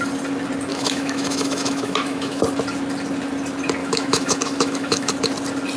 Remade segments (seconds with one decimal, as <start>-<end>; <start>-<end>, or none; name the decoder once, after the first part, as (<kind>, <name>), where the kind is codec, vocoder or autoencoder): 0.7-2.4 (autoencoder, DAC-VAE); 3.8-5.1